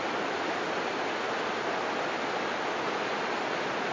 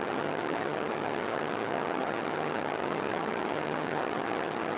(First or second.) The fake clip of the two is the second